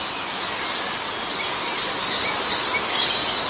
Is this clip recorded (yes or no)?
yes